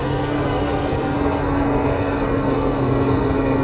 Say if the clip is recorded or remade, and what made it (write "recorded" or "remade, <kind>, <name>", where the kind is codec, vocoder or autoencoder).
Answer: remade, codec, SNAC